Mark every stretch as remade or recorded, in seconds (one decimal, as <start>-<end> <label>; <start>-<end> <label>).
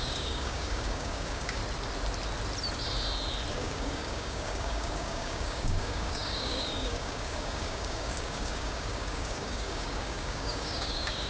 0.0-1.6 remade; 1.6-3.5 recorded; 3.5-11.3 remade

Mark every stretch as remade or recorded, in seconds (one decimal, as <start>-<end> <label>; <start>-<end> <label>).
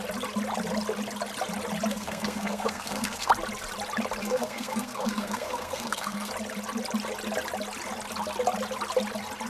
0.0-1.9 recorded; 1.9-3.3 remade; 3.3-4.2 recorded; 4.2-6.3 remade; 6.3-9.5 recorded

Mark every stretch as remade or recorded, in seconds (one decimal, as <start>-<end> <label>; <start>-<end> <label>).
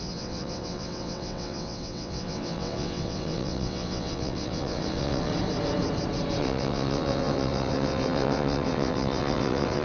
0.0-5.3 remade; 5.3-6.4 recorded; 6.4-9.8 remade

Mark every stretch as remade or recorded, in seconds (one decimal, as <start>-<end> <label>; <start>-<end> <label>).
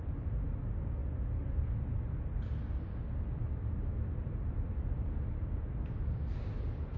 0.0-7.0 recorded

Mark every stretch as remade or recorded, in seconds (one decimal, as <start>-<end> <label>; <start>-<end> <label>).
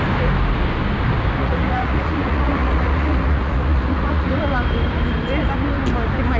0.0-1.4 recorded; 1.4-4.4 remade; 4.4-6.4 recorded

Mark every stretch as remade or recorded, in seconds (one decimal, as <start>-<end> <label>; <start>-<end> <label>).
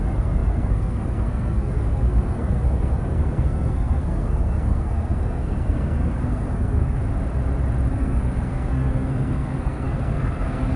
0.0-7.0 remade; 7.0-7.9 recorded; 7.9-10.8 remade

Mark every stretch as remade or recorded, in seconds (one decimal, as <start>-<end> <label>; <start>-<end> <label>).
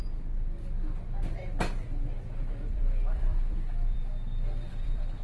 0.0-2.7 recorded; 2.7-4.0 remade; 4.0-4.7 recorded; 4.7-5.2 remade